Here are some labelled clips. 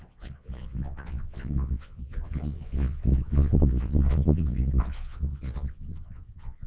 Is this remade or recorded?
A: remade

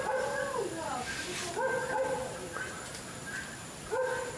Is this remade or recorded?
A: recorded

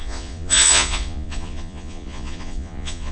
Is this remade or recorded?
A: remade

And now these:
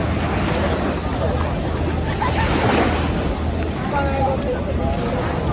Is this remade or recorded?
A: recorded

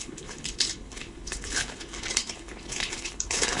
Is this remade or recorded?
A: remade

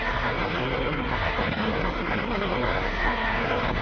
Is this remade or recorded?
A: remade